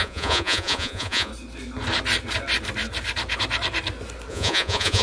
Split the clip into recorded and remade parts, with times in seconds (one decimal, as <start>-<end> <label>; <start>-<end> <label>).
0.0-1.3 remade; 1.3-4.3 recorded; 4.3-5.0 remade